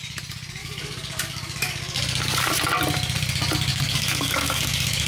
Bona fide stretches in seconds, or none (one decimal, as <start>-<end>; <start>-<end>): 0.0-0.6; 2.5-3.7